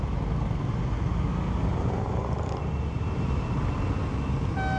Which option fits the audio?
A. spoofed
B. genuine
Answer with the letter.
B